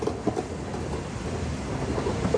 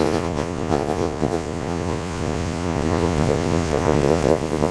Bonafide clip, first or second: first